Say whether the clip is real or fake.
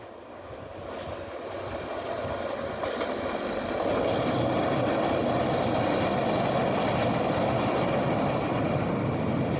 real